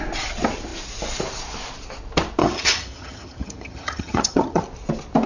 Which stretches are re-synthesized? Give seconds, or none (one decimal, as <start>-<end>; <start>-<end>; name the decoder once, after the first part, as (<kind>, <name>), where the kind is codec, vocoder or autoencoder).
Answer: 2.4-4.6 (vocoder, HiFi-GAN)